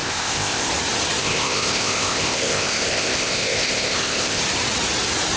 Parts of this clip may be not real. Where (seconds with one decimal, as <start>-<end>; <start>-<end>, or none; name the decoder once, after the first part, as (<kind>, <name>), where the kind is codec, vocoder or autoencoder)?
0.0-0.7 (codec, ZipCodec); 1.2-4.4

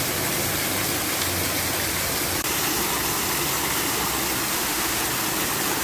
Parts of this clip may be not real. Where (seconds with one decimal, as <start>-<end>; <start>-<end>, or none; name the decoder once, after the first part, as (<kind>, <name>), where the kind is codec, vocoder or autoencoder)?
4.5-5.0 (autoencoder, DAC-VAE)

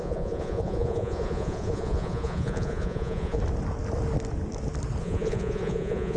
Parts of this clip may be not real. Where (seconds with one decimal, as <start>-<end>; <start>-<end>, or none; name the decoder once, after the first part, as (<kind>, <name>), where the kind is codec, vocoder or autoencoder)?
0.0-3.4 (vocoder, Vocos); 5.0-6.2

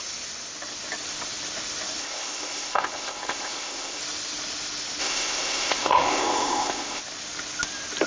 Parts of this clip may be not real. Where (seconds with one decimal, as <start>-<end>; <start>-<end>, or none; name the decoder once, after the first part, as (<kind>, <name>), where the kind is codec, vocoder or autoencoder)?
2.0-4.0 (codec, ZipCodec); 5.0-7.0

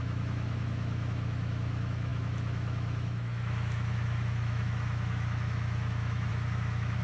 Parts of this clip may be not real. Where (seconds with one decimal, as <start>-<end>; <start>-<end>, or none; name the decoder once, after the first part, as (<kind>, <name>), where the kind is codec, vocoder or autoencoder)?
0.0-7.0 (autoencoder, DAC-VAE)

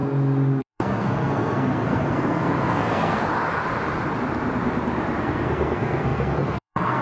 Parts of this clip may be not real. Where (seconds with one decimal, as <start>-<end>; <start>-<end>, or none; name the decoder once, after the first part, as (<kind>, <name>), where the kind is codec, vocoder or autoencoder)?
0.6-3.3 (codec, SNAC); 5.2-7.0